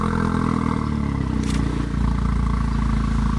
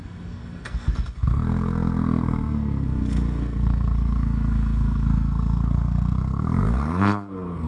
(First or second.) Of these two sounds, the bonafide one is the first